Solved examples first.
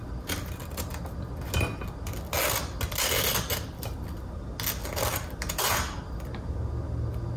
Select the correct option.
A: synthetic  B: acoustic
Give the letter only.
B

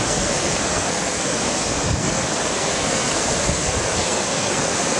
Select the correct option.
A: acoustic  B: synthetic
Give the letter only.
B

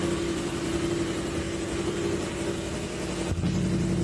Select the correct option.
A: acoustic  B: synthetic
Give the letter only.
A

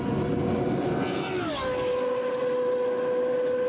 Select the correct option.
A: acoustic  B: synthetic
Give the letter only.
A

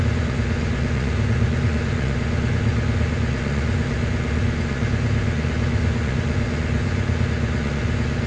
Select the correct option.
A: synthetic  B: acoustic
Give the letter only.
A